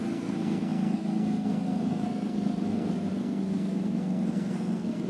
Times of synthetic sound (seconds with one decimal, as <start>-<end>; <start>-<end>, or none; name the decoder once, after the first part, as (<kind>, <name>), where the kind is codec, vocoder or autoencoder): 0.0-5.1 (codec, SNAC)